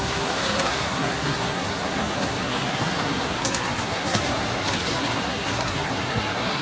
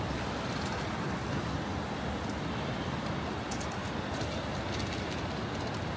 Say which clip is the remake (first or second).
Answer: first